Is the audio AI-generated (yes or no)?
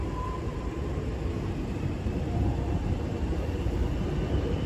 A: yes